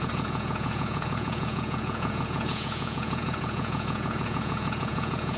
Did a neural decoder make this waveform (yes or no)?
yes